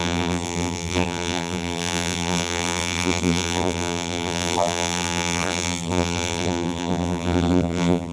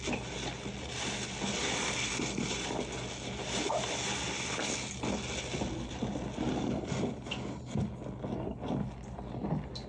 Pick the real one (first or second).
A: second